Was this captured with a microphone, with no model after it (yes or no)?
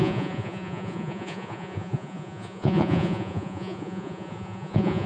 no